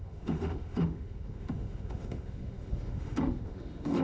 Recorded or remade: remade